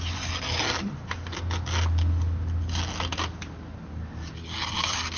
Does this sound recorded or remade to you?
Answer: recorded